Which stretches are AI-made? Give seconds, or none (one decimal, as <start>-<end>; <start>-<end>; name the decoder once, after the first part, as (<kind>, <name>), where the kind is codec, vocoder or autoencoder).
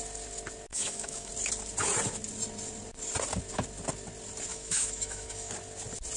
0.7-1.3 (autoencoder, DAC-VAE); 4.5-5.5